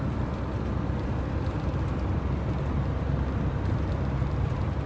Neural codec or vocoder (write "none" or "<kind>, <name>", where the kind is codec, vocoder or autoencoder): none